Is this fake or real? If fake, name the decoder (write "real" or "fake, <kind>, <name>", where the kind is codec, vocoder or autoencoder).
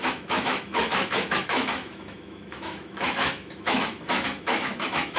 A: fake, autoencoder, DAC-VAE